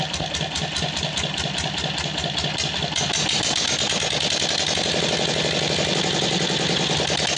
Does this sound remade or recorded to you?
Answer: recorded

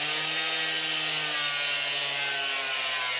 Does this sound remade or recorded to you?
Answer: recorded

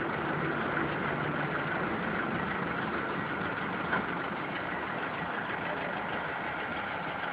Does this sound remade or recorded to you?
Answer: recorded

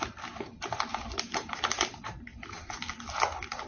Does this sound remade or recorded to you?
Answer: recorded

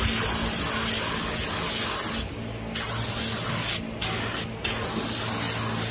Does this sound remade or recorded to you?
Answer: recorded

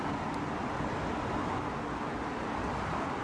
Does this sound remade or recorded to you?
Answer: recorded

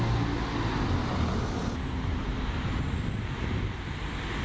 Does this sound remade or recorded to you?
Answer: recorded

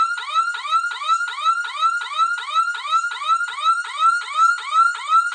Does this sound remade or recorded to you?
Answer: recorded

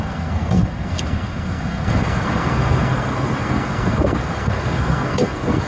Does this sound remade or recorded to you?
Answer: remade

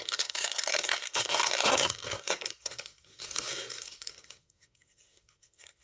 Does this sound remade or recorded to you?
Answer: remade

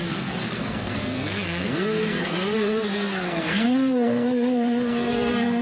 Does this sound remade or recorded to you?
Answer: remade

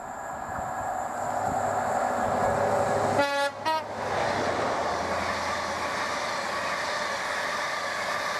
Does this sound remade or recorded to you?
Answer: recorded